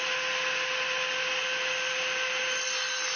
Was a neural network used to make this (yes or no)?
no